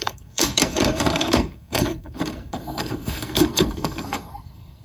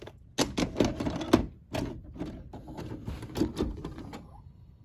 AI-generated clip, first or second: first